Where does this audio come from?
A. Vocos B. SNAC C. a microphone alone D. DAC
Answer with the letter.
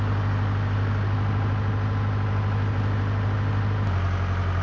C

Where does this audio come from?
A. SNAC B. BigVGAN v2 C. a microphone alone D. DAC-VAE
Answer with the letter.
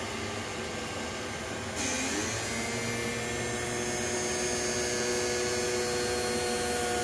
C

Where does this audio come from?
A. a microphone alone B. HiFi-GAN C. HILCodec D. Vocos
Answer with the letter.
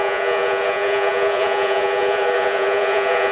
D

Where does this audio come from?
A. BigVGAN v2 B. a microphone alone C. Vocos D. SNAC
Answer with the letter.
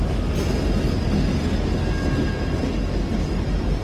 B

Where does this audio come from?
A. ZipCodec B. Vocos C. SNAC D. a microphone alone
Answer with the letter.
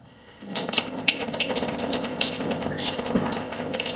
A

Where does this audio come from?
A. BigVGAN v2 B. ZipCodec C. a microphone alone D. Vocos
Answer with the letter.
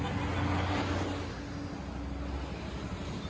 C